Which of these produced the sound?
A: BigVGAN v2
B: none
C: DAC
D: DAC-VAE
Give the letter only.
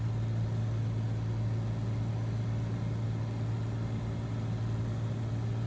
B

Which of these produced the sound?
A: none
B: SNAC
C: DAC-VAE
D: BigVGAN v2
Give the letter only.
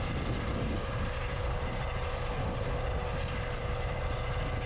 A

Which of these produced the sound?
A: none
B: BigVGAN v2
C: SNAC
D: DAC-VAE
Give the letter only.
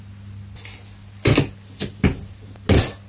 A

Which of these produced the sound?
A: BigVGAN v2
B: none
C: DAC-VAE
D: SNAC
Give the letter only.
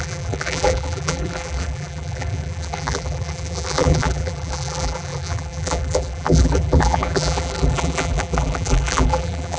A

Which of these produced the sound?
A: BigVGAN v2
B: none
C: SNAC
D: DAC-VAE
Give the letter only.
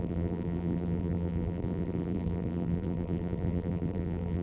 A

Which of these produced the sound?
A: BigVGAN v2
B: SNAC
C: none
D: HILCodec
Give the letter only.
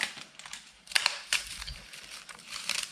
A